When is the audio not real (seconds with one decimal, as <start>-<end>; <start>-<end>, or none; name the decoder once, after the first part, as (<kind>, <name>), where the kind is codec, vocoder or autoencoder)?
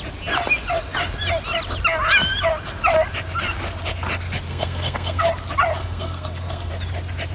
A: 4.5-5.2 (codec, SNAC); 5.8-6.7